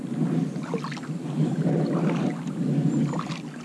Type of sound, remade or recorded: recorded